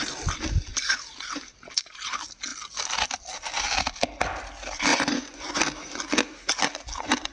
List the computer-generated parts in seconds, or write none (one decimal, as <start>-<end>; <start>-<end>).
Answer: 4.9-5.6